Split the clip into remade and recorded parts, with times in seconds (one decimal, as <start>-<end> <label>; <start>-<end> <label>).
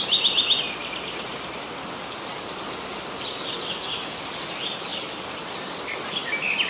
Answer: 0.0-6.7 recorded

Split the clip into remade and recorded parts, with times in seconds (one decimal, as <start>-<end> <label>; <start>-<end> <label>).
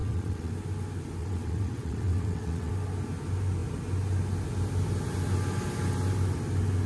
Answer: 0.0-0.5 remade; 0.5-1.2 recorded; 1.2-2.7 remade; 2.7-6.9 recorded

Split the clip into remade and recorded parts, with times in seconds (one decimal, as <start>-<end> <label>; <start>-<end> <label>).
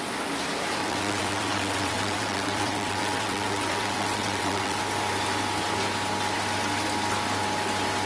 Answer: 0.0-0.8 recorded; 0.8-4.8 remade; 4.8-8.1 recorded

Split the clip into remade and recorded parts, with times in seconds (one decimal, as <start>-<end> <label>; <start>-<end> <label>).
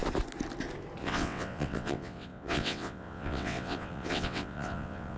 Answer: 0.0-1.0 recorded; 1.0-5.2 remade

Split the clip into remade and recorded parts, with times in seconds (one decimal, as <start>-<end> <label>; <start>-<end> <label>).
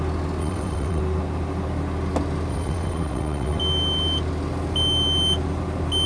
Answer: 0.0-0.4 recorded; 0.4-1.0 remade; 1.0-2.5 recorded; 2.5-3.6 remade; 3.6-6.1 recorded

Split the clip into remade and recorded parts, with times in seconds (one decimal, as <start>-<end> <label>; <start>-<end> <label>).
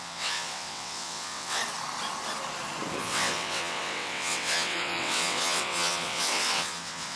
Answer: 0.0-1.6 remade; 1.6-3.0 recorded; 3.0-7.2 remade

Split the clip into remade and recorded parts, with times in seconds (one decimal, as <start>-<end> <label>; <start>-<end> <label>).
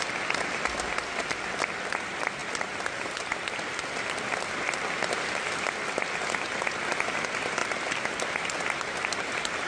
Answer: 0.0-9.7 recorded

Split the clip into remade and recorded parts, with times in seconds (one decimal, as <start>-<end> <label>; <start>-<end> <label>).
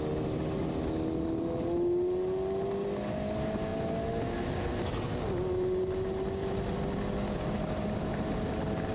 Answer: 0.0-8.9 recorded